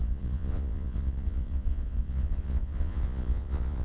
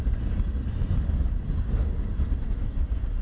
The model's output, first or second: first